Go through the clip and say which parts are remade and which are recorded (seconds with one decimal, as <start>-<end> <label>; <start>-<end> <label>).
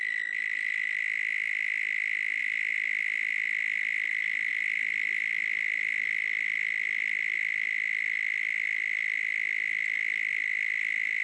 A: 0.0-5.3 remade; 5.3-10.3 recorded; 10.3-11.2 remade